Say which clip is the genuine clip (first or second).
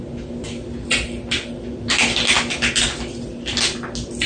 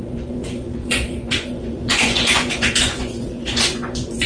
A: first